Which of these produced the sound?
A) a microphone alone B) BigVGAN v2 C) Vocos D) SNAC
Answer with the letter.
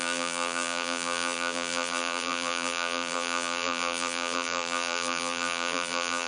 B